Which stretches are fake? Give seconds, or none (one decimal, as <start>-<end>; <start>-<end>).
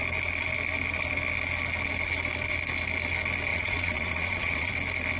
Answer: 3.5-4.7